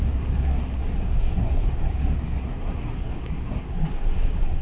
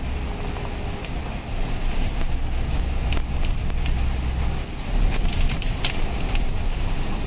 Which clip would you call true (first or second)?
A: second